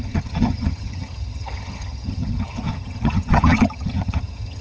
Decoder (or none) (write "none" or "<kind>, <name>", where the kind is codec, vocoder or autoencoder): vocoder, HiFi-GAN